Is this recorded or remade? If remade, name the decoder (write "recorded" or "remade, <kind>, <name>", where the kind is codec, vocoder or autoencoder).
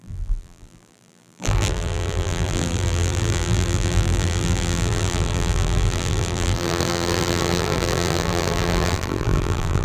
remade, vocoder, BigVGAN v2